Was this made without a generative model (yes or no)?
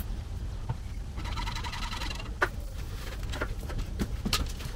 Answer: yes